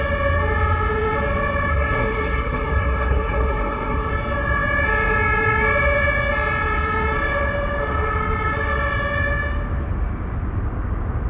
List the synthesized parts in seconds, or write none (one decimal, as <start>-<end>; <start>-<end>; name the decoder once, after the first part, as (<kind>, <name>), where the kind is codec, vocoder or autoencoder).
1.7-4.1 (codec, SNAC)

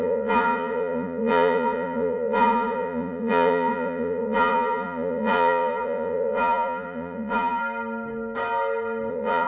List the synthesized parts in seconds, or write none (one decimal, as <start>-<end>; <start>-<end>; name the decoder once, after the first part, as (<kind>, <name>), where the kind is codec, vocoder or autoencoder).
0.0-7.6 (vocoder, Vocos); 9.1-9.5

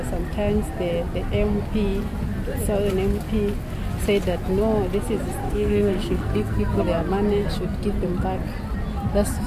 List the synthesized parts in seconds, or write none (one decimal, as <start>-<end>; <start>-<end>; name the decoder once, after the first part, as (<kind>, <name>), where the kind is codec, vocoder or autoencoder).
5.4-6.8 (codec, SNAC)